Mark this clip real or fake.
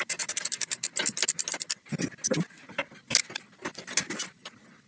real